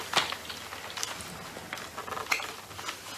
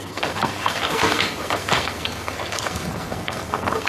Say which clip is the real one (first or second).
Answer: first